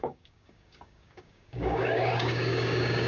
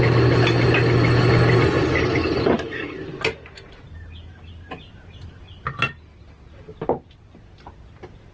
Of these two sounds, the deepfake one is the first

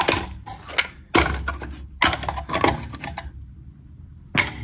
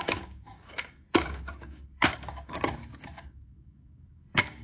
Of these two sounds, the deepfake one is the second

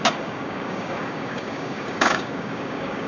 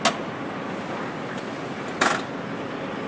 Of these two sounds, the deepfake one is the first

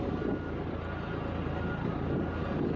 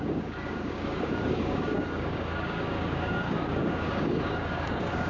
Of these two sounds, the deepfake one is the second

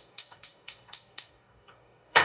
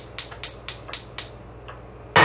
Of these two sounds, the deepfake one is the first